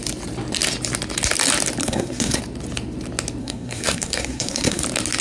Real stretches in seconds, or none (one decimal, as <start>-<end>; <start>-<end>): 0.0-1.8; 2.4-3.4; 4.8-5.2